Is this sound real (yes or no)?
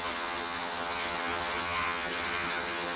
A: no